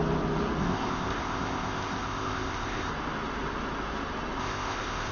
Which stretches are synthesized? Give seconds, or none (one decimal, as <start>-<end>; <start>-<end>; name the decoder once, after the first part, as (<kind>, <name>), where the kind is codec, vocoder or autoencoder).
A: 0.6-2.9 (codec, ZipCodec); 4.4-5.1